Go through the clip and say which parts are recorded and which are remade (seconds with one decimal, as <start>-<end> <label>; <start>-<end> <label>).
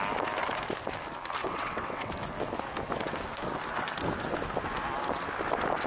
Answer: 0.0-1.4 recorded; 1.4-2.1 remade; 2.1-5.9 recorded